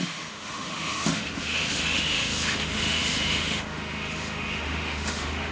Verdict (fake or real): fake